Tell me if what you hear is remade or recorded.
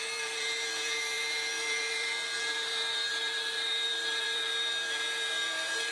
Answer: remade